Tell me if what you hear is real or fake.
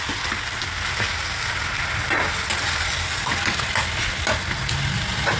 real